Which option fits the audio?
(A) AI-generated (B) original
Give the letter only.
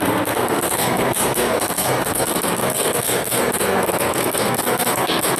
A